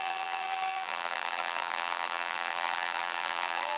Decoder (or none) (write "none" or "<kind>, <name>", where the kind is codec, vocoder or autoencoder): vocoder, BigVGAN v2